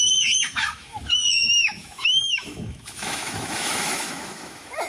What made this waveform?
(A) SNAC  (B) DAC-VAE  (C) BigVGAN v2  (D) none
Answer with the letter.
B